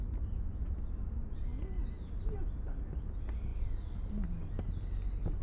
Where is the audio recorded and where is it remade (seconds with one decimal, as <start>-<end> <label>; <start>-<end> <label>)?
0.0-5.4 recorded